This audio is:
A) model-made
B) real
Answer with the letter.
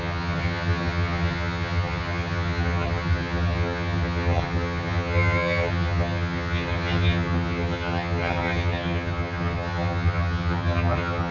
A